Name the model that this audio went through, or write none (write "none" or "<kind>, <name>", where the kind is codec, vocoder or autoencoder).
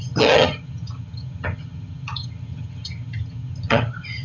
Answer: vocoder, HiFi-GAN